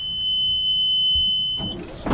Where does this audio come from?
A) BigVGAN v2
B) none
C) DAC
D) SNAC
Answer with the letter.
B